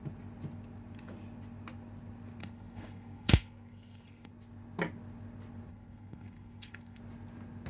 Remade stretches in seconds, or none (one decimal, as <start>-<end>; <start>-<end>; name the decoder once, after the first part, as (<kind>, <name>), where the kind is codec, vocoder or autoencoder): 2.4-4.3 (codec, SNAC); 5.7-7.0